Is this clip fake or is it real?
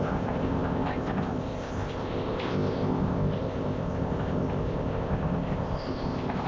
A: fake